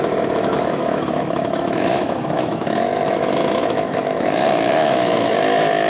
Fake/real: fake